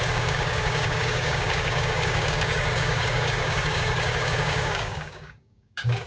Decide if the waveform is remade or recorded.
remade